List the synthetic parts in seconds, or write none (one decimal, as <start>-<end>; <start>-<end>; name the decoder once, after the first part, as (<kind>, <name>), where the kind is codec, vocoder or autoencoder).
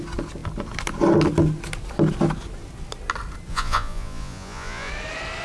3.5-4.9 (vocoder, Vocos)